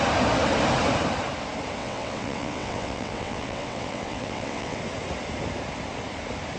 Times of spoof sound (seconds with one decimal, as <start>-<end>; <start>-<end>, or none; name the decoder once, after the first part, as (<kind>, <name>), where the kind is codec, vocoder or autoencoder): 1.8-4.8 (vocoder, WaveNeXt)